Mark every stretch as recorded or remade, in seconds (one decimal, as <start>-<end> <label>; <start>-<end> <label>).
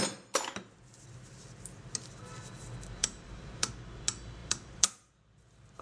0.0-3.0 recorded; 3.0-3.7 remade; 3.7-4.4 recorded; 4.4-5.8 remade